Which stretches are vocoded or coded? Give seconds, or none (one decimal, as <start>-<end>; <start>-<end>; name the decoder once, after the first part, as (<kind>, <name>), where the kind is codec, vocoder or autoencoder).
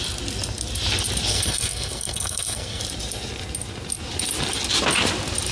1.3-2.8 (codec, SNAC)